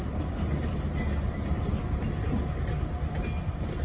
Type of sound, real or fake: real